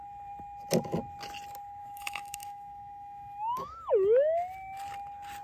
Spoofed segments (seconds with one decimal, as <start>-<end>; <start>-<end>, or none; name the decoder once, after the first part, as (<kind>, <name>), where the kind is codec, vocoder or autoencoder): 1.8-3.9 (autoencoder, DAC-VAE)

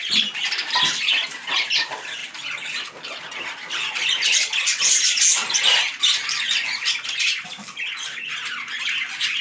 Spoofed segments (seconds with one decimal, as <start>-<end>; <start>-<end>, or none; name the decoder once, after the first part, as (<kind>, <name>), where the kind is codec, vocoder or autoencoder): none

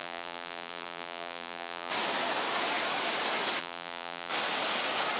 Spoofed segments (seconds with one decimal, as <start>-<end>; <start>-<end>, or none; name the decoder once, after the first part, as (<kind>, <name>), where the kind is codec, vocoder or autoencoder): 0.0-1.9 (vocoder, BigVGAN v2); 3.6-4.3

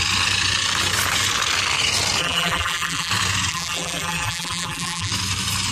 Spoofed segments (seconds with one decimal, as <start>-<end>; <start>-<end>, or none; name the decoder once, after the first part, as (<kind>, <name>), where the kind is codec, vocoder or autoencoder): 2.2-3.1 (vocoder, BigVGAN v2); 3.5-5.1

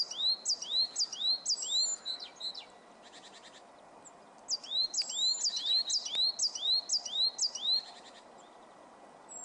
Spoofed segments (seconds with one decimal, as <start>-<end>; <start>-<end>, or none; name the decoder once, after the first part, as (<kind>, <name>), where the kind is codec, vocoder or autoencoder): 4.6-5.1 (vocoder, BigVGAN v2)